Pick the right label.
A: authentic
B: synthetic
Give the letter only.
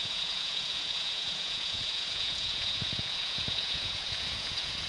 B